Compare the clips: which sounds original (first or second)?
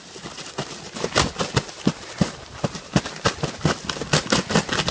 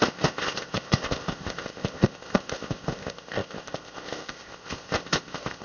first